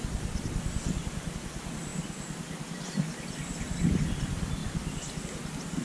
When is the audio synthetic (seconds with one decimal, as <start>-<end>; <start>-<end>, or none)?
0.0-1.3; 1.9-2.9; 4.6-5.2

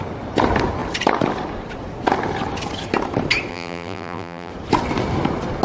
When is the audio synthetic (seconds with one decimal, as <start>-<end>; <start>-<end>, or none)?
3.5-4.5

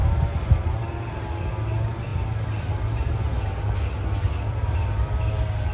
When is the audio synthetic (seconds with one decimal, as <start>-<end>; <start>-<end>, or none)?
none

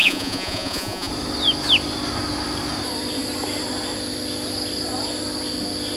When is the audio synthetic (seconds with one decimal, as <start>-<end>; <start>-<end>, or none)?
0.0-1.1

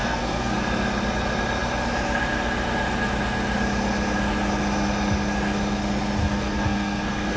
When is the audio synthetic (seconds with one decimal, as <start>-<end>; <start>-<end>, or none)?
0.0-0.6; 6.2-7.4

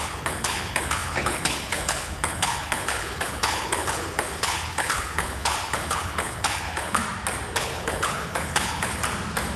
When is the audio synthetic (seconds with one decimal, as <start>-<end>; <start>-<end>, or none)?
0.0-7.0; 7.6-9.0

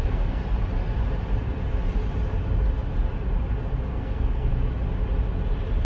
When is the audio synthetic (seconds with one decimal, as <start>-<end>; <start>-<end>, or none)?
0.0-0.4; 3.9-4.5

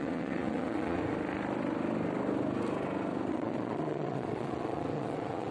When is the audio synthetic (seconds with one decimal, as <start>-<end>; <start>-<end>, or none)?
0.0-1.0; 3.3-5.5